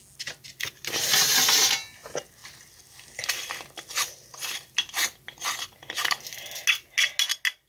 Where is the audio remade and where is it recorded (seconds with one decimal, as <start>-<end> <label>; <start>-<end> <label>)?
0.0-7.7 recorded